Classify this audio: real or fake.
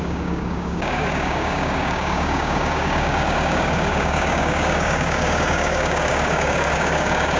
fake